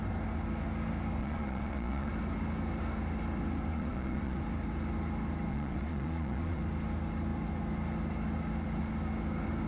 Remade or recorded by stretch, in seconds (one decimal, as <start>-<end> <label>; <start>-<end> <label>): 0.0-1.2 recorded; 1.2-2.1 remade; 2.1-3.7 recorded; 3.7-4.4 remade; 4.4-5.5 recorded; 5.5-6.6 remade; 6.6-9.7 recorded